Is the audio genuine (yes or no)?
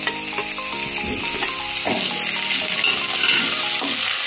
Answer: yes